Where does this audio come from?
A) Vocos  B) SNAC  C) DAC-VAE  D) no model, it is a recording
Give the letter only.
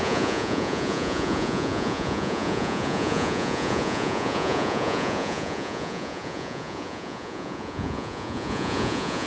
A